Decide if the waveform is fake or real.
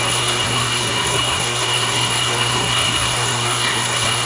fake